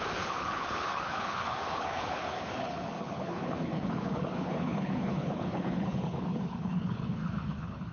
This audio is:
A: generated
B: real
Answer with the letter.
A